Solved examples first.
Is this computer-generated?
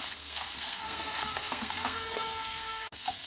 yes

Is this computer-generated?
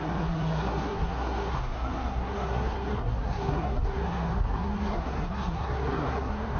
yes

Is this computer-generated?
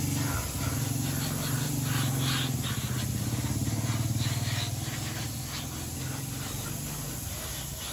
no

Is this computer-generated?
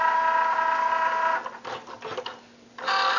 no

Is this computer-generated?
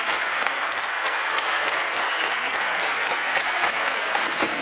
yes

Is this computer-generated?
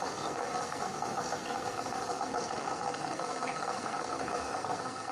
yes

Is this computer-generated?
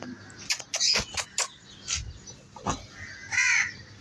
no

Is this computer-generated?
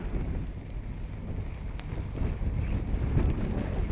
no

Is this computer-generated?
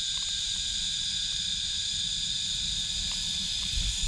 no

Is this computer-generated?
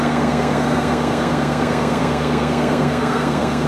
yes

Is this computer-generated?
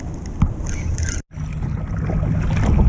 no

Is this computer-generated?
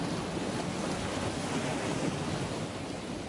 no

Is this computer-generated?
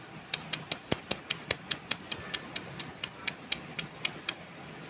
no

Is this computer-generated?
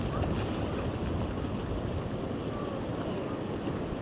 no